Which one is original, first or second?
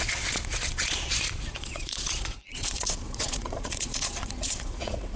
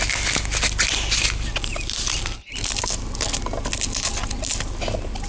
second